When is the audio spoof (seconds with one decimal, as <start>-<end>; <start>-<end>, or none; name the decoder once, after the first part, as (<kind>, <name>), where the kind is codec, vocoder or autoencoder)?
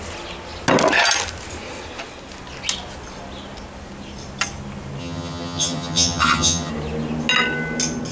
5.0-6.7 (vocoder, HiFi-GAN)